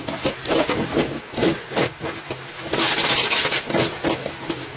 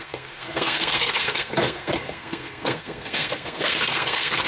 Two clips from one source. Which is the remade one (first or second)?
second